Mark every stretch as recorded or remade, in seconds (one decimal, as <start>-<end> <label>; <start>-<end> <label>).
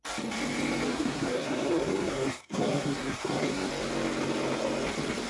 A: 0.0-0.9 recorded; 0.9-3.7 remade; 3.7-5.3 recorded